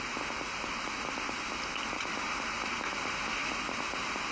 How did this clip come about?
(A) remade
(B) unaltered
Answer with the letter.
B